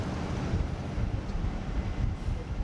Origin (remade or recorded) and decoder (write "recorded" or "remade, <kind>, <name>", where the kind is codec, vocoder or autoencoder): recorded